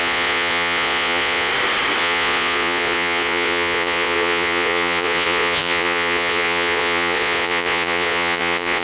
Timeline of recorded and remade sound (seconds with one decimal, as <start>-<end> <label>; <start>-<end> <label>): 0.0-1.5 remade; 1.5-2.0 recorded; 2.0-8.8 remade